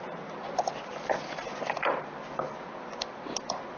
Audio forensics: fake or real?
real